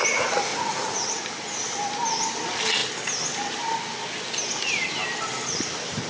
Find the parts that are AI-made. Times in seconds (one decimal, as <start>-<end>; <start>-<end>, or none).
0.5-1.2